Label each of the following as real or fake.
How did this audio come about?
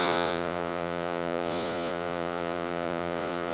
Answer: fake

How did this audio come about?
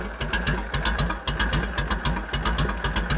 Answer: real